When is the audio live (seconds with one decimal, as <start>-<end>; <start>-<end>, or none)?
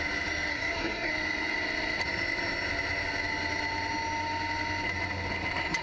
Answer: 0.0-0.5; 1.1-5.8